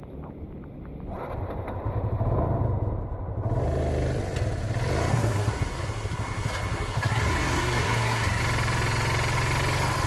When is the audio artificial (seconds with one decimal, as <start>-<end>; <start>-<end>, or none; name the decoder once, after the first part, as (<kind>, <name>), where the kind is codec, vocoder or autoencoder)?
5.1-8.4 (codec, SNAC)